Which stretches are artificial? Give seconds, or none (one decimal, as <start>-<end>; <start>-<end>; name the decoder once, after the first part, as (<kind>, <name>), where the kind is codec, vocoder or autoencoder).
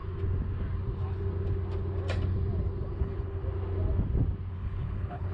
3.0-3.4 (codec, HILCodec); 4.5-5.3